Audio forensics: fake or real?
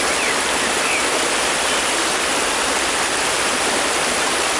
real